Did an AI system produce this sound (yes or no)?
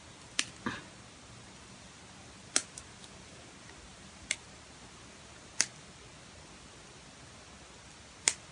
no